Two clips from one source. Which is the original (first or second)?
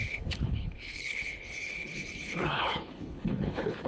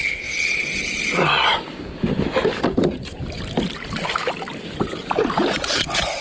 second